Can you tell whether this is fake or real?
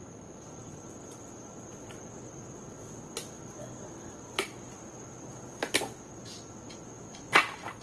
real